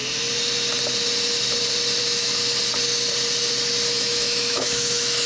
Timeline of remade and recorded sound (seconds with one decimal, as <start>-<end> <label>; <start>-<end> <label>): 0.0-2.0 recorded; 2.0-2.4 remade; 2.4-3.9 recorded; 3.9-5.3 remade

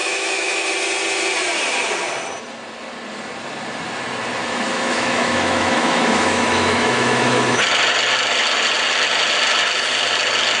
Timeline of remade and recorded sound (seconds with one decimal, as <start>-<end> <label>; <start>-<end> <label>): 0.0-0.7 remade; 0.7-4.4 recorded; 4.4-7.6 remade; 7.6-10.6 recorded

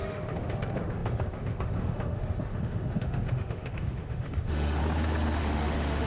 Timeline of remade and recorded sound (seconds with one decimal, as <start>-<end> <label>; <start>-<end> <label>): 0.0-4.8 remade; 4.8-5.4 recorded; 5.4-6.1 remade

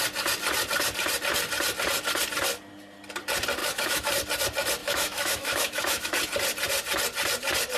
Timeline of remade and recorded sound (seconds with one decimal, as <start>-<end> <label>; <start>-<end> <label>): 0.0-3.6 recorded; 3.6-4.1 remade; 4.1-4.8 recorded; 4.8-6.1 remade; 6.1-7.8 recorded

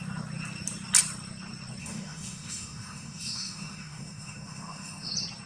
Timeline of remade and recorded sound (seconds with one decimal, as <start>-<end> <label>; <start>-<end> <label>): 0.0-1.8 recorded; 1.8-5.1 remade; 5.1-5.5 recorded

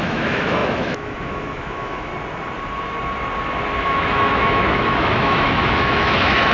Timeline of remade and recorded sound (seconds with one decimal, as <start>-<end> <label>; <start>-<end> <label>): 0.0-2.1 remade; 2.1-3.8 recorded; 3.8-6.5 remade

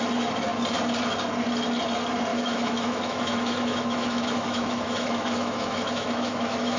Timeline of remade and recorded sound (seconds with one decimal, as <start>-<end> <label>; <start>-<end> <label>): 0.0-2.3 recorded; 2.3-6.8 remade

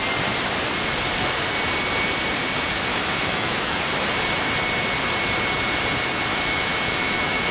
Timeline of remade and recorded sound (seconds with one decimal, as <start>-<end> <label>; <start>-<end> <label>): 0.0-2.9 recorded; 2.9-3.8 remade; 3.8-6.3 recorded; 6.3-7.5 remade